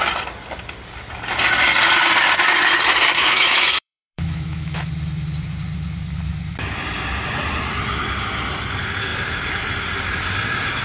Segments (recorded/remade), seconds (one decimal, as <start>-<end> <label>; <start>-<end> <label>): 0.0-3.2 recorded; 3.2-4.9 remade; 4.9-10.8 recorded